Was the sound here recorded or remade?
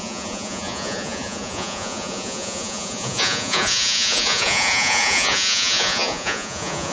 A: remade